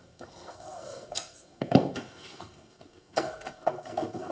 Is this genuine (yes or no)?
no